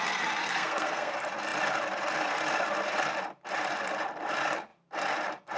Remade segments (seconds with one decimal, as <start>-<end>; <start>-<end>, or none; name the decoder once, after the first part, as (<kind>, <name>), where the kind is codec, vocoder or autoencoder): 0.4-1.1 (codec, SNAC)